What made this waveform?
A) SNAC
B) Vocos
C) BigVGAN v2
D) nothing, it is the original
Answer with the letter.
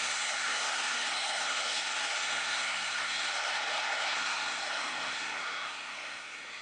A